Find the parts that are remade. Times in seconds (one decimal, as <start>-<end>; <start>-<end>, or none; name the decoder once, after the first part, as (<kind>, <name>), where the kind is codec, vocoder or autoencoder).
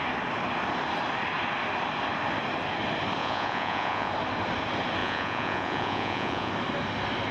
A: 3.2-4.1 (vocoder, Vocos); 5.0-6.5